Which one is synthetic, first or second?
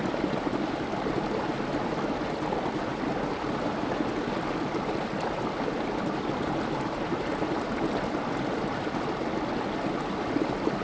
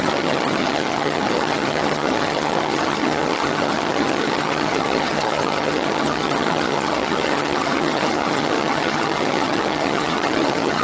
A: second